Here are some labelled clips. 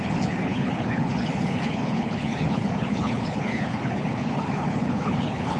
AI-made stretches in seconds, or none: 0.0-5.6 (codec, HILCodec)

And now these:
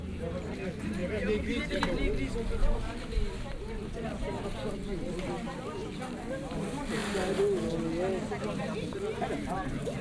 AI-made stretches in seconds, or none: 1.0-1.8 (vocoder, BigVGAN v2); 7.0-7.8; 8.6-10.0

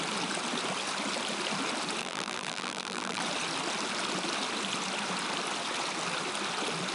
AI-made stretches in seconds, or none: 2.0-3.2 (vocoder, BigVGAN v2)

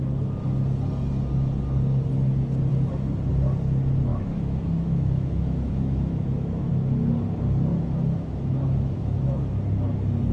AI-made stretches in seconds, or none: 4.1-6.7 (autoencoder, DAC-VAE); 7.7-9.5

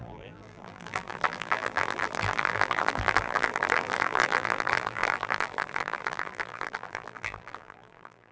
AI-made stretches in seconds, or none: 0.0-8.3 (vocoder, BigVGAN v2)

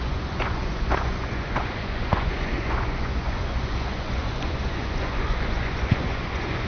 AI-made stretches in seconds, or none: 0.0-6.7 (vocoder, Vocos)

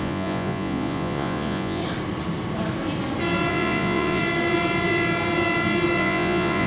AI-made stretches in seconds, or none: 0.0-1.8 (vocoder, Vocos); 3.5-4.2; 6.0-6.7